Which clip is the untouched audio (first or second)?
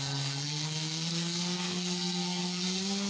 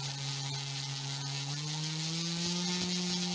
second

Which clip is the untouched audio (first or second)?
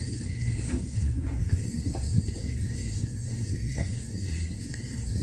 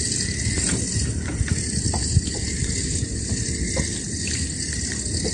second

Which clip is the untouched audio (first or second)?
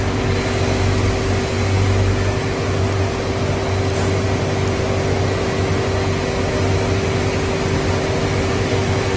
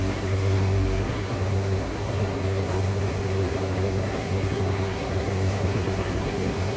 first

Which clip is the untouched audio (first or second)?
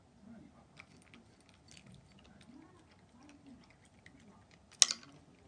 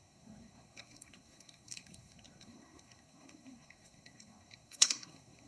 first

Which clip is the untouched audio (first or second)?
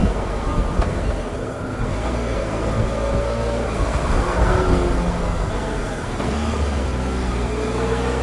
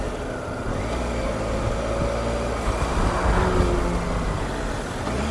second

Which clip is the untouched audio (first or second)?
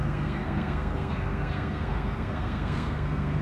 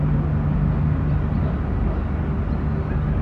second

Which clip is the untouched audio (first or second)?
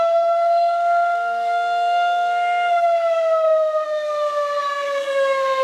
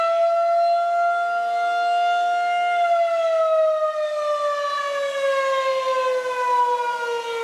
second